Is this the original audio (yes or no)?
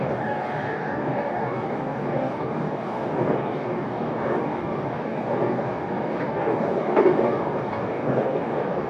no